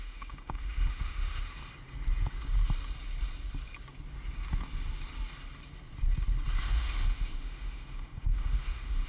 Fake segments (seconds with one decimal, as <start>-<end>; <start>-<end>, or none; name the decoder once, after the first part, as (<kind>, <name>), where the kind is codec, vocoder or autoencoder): 0.0-1.6 (autoencoder, DAC-VAE); 6.6-9.1